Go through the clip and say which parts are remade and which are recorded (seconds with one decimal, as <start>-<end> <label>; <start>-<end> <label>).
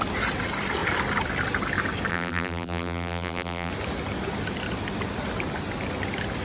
0.0-2.1 recorded; 2.1-3.7 remade; 3.7-6.4 recorded